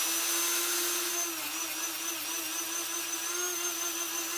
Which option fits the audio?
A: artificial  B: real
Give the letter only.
B